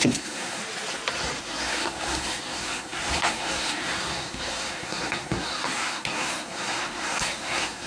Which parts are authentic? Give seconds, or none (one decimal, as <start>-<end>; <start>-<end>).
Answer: 0.6-1.4